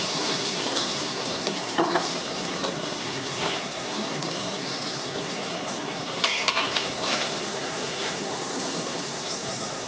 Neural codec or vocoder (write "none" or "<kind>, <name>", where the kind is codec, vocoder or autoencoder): codec, SNAC